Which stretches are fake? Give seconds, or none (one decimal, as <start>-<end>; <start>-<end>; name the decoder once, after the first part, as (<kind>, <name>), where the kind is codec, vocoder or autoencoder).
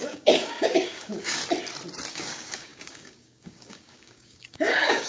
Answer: 0.0-1.4 (codec, DAC); 2.1-5.1